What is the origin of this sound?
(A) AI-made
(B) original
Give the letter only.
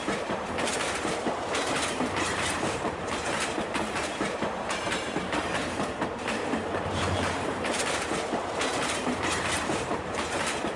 A